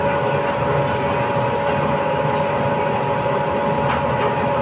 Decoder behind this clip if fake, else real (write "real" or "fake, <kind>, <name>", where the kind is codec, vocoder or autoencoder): real